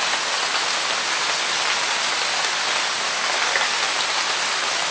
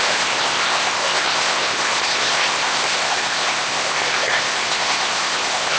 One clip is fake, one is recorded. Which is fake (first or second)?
second